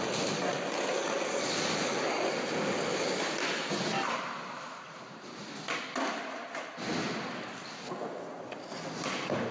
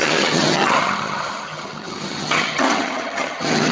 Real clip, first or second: first